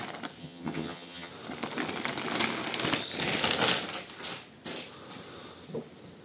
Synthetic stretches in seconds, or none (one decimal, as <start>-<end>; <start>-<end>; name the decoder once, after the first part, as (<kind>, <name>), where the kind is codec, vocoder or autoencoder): 0.4-1.3 (vocoder, HiFi-GAN)